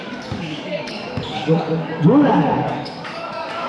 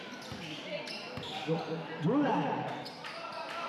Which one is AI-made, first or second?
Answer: first